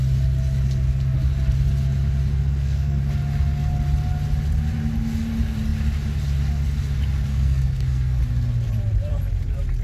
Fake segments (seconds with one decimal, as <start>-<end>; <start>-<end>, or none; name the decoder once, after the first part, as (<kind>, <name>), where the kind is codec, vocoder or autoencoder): 2.3-3.0 (codec, SNAC); 7.3-8.2

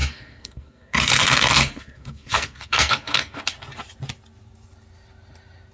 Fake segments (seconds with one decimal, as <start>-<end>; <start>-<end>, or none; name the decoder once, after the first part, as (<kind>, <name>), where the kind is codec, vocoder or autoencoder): 0.0-3.4 (codec, SNAC)

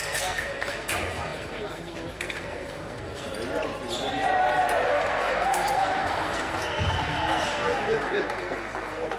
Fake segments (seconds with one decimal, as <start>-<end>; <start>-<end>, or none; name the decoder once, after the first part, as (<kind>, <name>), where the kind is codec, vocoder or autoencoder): 0.0-3.3 (codec, SNAC); 4.9-9.2

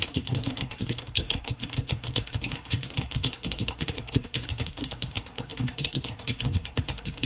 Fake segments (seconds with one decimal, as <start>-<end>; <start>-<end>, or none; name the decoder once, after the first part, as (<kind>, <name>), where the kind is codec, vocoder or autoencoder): 0.0-7.3 (codec, SNAC)